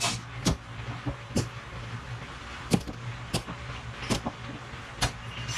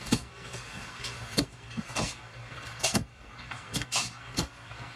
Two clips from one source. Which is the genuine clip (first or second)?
first